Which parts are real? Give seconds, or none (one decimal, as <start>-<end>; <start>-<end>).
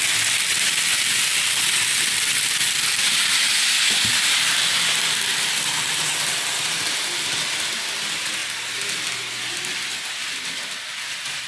0.0-1.3; 2.1-11.5